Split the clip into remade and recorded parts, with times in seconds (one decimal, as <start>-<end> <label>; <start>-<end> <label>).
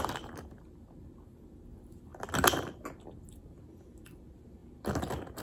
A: 0.0-5.4 recorded